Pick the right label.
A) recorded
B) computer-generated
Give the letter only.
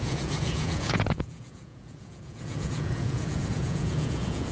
B